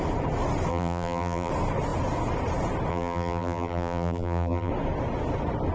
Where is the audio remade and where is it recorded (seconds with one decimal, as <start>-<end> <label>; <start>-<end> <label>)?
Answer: 0.0-0.7 recorded; 0.7-1.5 remade; 1.5-2.9 recorded; 2.9-4.7 remade; 4.7-5.7 recorded

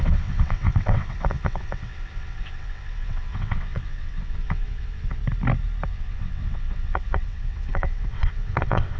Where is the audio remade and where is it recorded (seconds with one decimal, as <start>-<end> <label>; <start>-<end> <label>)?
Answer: 0.0-5.2 remade; 5.2-5.9 recorded; 5.9-9.0 remade

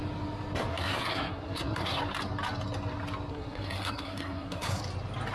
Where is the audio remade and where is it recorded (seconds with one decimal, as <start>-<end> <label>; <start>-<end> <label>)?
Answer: 0.0-0.7 recorded; 0.7-2.0 remade; 2.0-3.3 recorded; 3.3-4.8 remade; 4.8-5.3 recorded

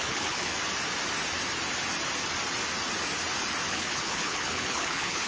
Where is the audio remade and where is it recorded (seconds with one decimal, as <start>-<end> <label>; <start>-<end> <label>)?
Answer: 0.0-0.5 remade; 0.5-3.7 recorded; 3.7-5.3 remade

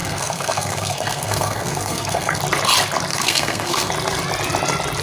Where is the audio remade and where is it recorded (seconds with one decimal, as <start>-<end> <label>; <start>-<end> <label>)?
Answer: 0.0-2.4 remade; 2.4-3.1 recorded; 3.1-3.9 remade; 3.9-5.0 recorded

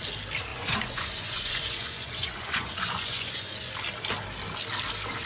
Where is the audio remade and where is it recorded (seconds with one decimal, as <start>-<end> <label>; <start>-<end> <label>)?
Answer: 0.0-0.5 recorded; 0.5-3.7 remade; 3.7-5.3 recorded

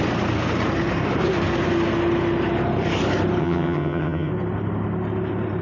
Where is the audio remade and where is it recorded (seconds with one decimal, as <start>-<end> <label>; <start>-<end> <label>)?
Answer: 0.0-3.4 recorded; 3.4-4.3 remade; 4.3-5.6 recorded